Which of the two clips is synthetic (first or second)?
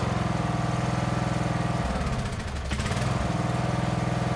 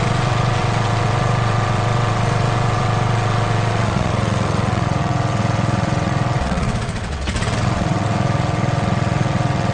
second